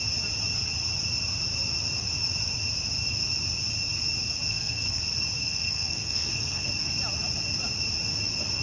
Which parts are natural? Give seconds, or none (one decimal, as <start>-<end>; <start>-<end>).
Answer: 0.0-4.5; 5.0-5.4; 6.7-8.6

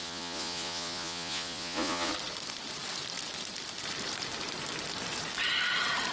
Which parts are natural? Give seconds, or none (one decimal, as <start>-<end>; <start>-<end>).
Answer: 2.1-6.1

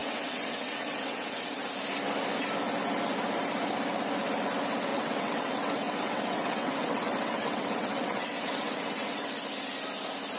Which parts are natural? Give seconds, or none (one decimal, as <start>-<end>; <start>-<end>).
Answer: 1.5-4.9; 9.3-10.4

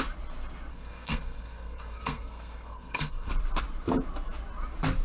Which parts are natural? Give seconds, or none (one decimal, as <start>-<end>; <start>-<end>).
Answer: 0.0-0.7; 3.3-5.0